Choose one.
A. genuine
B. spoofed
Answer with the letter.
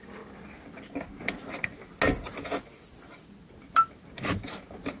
A